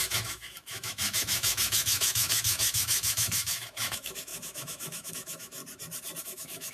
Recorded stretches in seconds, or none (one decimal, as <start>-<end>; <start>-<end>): 5.6-6.2